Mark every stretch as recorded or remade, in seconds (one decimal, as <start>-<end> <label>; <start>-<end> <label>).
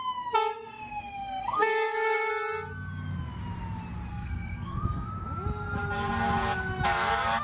0.0-0.7 recorded; 0.7-2.3 remade; 2.3-4.1 recorded; 4.1-5.1 remade; 5.1-7.4 recorded